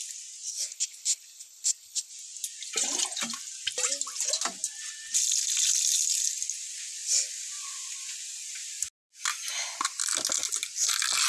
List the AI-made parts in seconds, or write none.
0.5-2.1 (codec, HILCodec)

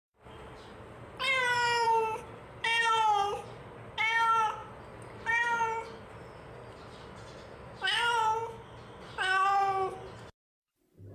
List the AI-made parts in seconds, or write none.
0.0-3.7 (vocoder, BigVGAN v2)

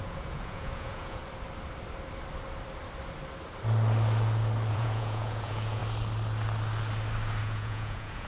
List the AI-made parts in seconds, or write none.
0.0-1.2 (vocoder, Vocos); 4.7-5.8; 7.4-8.3

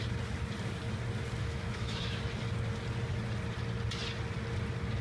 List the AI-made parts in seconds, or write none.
1.4-2.2 (autoencoder, DAC-VAE)